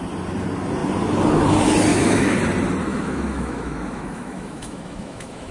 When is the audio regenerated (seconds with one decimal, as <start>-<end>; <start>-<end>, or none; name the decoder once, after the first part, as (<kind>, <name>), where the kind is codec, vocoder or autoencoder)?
1.9-2.4 (autoencoder, DAC-VAE); 2.9-5.5